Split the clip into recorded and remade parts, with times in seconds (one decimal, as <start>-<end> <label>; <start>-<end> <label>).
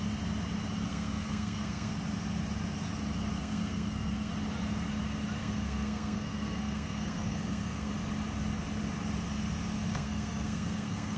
0.0-0.9 recorded; 0.9-1.9 remade; 1.9-3.4 recorded; 3.4-4.3 remade; 4.3-5.4 recorded; 5.4-7.9 remade; 7.9-9.9 recorded; 9.9-11.2 remade